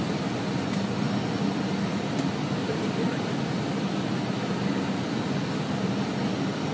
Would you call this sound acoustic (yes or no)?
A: yes